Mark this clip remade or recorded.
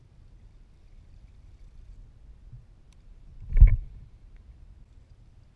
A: recorded